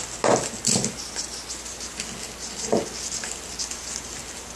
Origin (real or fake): real